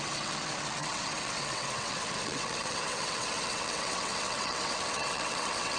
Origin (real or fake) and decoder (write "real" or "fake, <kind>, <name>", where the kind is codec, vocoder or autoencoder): fake, vocoder, WaveNeXt